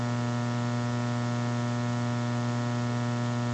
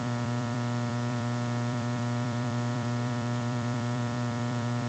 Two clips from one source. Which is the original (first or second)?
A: first